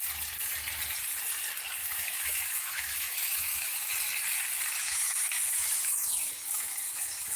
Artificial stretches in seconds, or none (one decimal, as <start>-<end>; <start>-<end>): 1.8-3.9; 4.8-7.4